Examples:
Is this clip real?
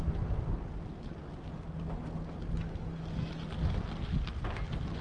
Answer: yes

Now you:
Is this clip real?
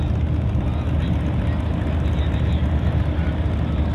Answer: yes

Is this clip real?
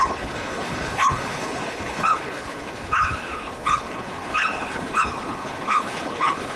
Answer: no